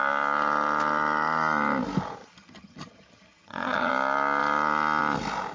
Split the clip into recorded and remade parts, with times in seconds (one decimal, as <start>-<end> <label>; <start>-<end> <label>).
0.0-2.2 recorded; 2.2-3.9 remade; 3.9-5.5 recorded